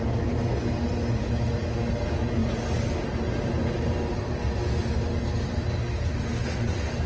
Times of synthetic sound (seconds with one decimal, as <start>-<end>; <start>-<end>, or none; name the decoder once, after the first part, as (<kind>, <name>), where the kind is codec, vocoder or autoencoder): none